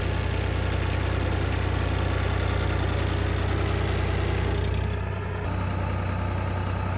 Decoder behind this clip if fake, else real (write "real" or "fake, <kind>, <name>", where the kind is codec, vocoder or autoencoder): real